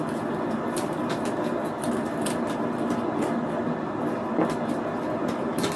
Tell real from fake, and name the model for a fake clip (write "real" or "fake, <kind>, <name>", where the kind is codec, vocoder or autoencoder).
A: real